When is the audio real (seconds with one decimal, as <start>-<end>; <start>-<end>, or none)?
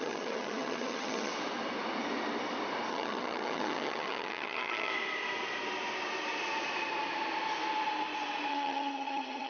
1.3-2.9; 4.9-8.5